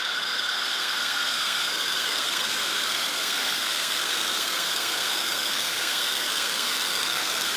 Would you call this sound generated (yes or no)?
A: yes